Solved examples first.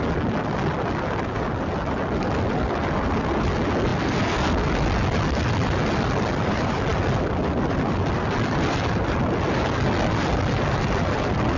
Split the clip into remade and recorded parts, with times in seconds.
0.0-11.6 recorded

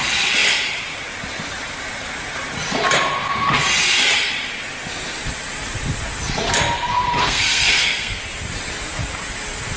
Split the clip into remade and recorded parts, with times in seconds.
0.0-7.2 recorded; 7.2-8.2 remade; 8.2-9.8 recorded

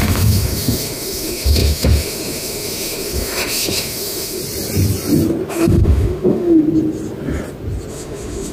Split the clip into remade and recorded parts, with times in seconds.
0.0-4.4 remade; 4.4-5.5 recorded; 5.5-6.6 remade; 6.6-7.9 recorded; 7.9-8.5 remade

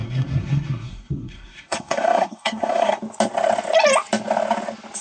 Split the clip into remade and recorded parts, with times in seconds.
0.0-3.0 remade; 3.0-5.0 recorded

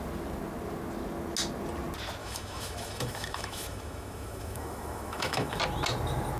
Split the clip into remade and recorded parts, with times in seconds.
0.0-2.2 recorded; 2.2-5.6 remade; 5.6-6.4 recorded

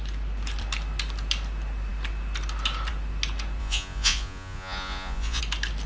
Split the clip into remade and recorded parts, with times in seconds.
0.0-3.6 recorded; 3.6-5.4 remade; 5.4-5.9 recorded

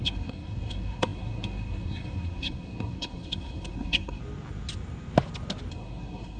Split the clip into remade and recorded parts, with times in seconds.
0.0-4.2 remade; 4.2-5.7 recorded; 5.7-6.4 remade